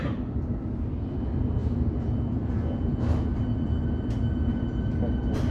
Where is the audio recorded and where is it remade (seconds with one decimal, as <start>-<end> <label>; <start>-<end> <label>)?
0.0-5.5 recorded